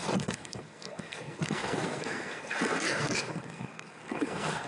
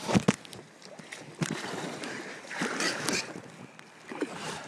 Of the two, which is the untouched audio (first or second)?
second